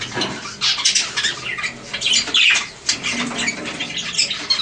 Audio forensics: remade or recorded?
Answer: recorded